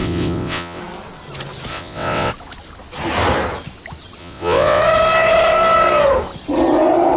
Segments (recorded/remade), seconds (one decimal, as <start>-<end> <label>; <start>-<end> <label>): 0.0-0.8 remade; 0.8-1.7 recorded; 1.7-2.3 remade; 2.3-4.2 recorded; 4.2-4.8 remade; 4.8-7.2 recorded